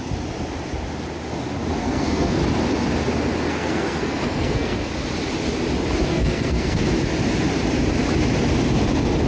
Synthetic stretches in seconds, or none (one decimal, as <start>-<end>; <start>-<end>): 1.8-2.4; 3.5-4.9; 6.1-6.8